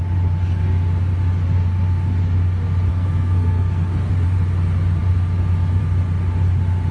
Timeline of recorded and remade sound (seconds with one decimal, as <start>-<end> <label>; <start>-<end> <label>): 0.0-2.9 recorded; 2.9-4.1 remade; 4.1-6.9 recorded